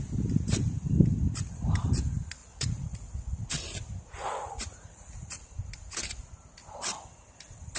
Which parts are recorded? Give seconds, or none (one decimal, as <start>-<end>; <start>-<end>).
0.0-2.4; 3.4-4.2; 5.4-7.8